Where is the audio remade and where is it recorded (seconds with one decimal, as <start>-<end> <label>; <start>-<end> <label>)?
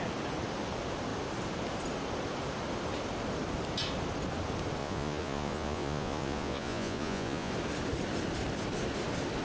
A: 0.0-4.8 recorded; 4.8-7.5 remade; 7.5-9.4 recorded